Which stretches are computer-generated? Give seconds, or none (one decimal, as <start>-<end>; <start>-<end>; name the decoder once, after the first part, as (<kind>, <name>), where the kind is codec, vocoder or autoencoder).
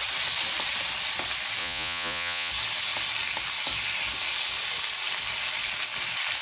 1.6-2.5 (vocoder, Vocos)